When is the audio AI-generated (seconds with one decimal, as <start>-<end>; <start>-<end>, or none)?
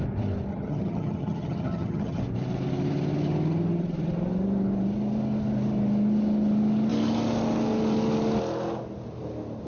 0.5-2.2